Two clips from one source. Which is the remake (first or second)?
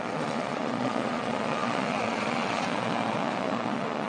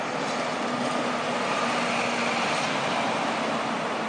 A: first